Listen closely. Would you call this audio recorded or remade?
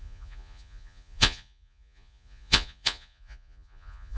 remade